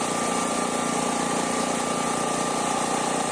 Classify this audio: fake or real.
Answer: real